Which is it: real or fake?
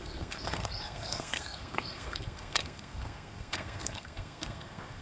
fake